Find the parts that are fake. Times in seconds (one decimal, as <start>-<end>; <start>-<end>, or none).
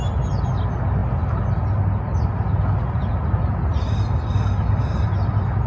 none